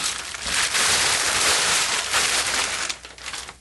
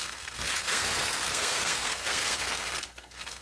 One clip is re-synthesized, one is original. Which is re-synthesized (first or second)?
second